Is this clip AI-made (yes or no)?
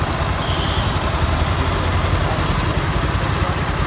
no